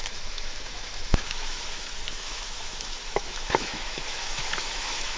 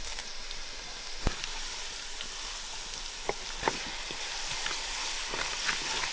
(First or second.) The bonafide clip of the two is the second